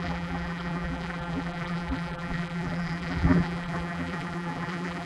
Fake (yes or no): yes